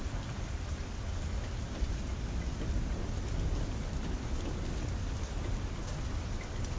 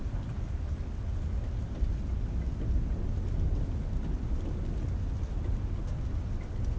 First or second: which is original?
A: second